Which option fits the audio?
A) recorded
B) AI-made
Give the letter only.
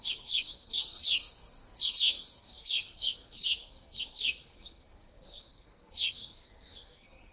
B